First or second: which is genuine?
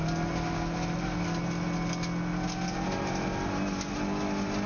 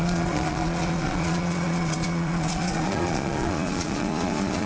first